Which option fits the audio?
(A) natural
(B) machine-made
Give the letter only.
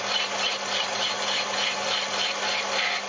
A